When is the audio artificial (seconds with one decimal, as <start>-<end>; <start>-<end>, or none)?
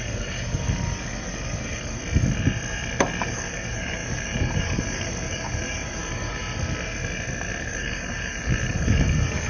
0.0-2.0; 3.2-6.4; 7.6-9.5